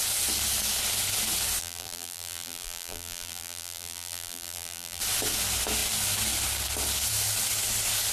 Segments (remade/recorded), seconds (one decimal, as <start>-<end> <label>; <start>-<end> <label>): 0.0-1.6 recorded; 1.6-5.0 remade; 5.0-8.1 recorded